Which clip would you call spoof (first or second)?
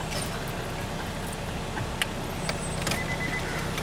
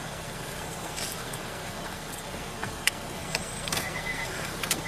second